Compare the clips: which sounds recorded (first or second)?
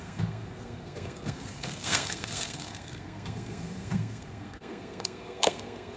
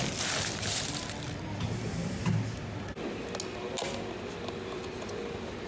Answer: second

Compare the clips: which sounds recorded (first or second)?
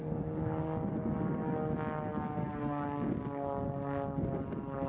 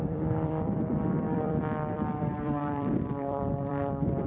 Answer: first